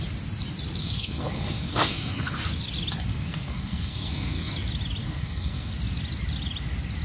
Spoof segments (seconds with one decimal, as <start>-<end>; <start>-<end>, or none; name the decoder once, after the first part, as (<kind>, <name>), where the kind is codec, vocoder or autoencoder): 0.8-2.3 (codec, SNAC); 3.1-4.5; 5.0-5.7